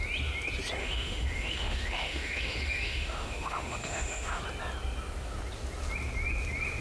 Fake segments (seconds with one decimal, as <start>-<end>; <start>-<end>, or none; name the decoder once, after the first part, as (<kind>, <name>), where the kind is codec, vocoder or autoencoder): 0.8-4.4 (autoencoder, DAC-VAE)